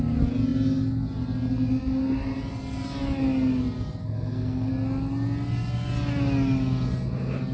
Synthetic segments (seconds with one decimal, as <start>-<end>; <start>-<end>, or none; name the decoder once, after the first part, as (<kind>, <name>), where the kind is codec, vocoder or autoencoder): 4.0-4.7 (codec, SNAC)